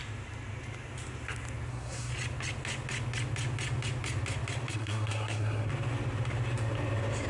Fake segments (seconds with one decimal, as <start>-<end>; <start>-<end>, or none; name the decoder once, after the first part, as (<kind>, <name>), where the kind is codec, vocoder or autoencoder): 1.7-2.1 (codec, SNAC); 4.7-5.7